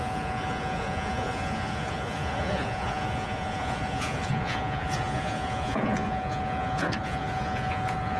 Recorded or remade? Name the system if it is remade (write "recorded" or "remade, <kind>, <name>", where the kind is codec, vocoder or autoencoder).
remade, vocoder, Vocos